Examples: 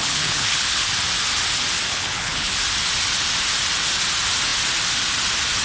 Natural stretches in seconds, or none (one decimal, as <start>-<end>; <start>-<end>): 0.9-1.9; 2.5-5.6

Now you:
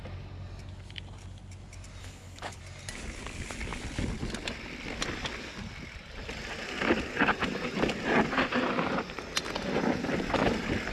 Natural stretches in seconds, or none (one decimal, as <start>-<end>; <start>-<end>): 0.0-2.0; 2.6-10.9

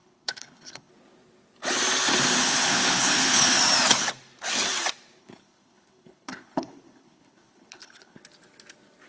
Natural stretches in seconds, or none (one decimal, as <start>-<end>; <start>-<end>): 0.9-2.4; 3.6-5.2; 8.2-9.1